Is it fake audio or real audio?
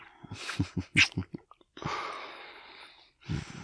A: real